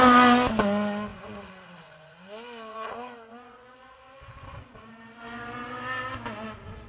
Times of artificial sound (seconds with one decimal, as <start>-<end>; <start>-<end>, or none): 1.1-4.9